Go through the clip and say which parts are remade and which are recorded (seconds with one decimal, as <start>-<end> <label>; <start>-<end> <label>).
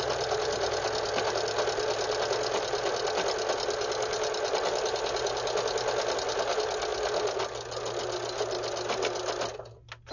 0.0-10.1 recorded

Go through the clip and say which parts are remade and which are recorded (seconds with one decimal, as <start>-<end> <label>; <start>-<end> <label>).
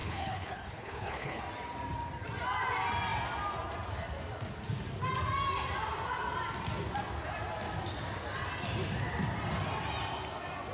0.0-1.4 remade; 1.4-10.7 recorded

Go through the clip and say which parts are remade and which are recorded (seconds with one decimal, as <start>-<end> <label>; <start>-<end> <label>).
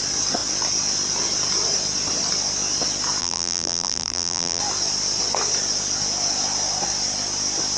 0.0-3.2 recorded; 3.2-4.6 remade; 4.6-7.8 recorded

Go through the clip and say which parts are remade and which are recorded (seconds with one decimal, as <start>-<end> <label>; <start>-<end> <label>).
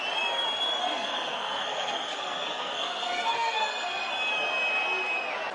0.0-0.8 recorded; 0.8-4.1 remade; 4.1-5.5 recorded